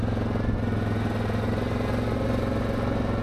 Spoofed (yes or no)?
no